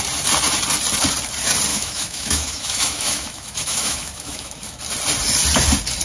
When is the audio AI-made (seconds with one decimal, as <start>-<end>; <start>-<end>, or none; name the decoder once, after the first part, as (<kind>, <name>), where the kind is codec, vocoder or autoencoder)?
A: 1.7-4.8 (autoencoder, DAC-VAE)